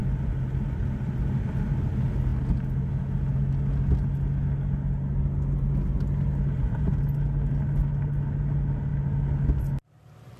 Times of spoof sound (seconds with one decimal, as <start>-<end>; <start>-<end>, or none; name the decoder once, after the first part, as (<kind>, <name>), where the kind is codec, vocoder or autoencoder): none